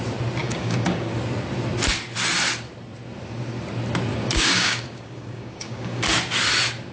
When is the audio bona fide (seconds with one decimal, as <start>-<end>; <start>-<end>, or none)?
0.0-0.4; 1.1-4.1; 6.0-6.9